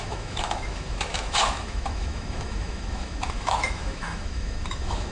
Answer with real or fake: fake